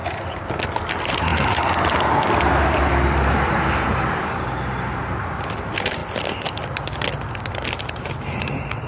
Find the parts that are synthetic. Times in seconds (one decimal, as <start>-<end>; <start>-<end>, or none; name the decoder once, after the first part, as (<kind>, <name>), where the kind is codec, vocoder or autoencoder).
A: 0.8-1.3 (vocoder, BigVGAN v2); 4.2-6.0; 7.5-8.9